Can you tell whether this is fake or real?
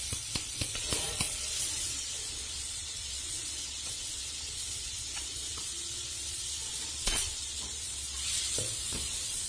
fake